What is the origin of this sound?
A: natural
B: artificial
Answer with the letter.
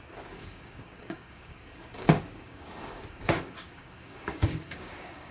B